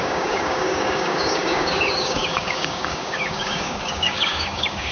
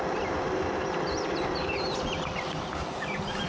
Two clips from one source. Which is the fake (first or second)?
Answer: first